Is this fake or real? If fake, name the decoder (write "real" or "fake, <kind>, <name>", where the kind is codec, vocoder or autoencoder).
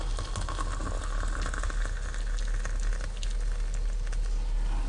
real